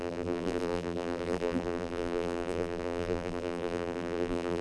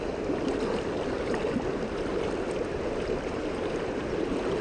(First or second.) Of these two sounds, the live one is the second